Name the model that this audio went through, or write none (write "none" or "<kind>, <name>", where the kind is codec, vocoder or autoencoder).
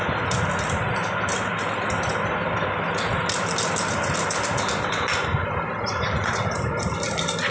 none